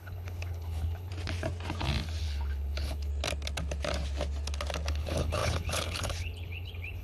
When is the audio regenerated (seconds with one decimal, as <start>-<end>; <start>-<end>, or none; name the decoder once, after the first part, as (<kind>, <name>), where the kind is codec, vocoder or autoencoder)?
0.0-1.1 (codec, HILCodec); 2.2-3.1; 4.9-7.0

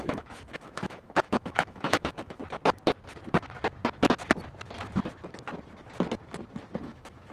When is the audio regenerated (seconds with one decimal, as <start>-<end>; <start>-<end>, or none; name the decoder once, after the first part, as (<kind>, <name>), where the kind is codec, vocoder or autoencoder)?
0.0-2.4 (autoencoder, DAC-VAE); 6.8-7.3

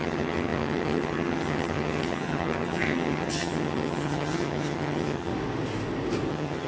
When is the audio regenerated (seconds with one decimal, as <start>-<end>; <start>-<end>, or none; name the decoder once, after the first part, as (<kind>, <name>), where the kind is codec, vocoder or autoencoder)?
0.0-5.3 (vocoder, HiFi-GAN); 6.3-6.7